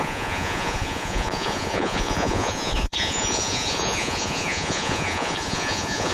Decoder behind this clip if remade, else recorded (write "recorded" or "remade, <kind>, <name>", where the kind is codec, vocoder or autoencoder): remade, vocoder, Vocos